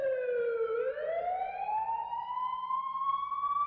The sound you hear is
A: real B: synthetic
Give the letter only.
B